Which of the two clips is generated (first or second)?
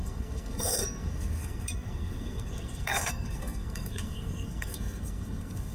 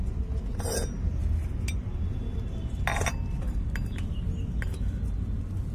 first